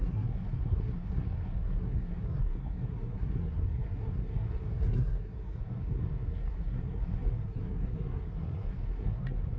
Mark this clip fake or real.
fake